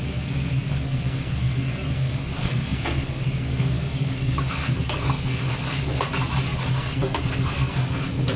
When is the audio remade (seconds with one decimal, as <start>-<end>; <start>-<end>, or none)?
0.0-6.1; 6.7-8.4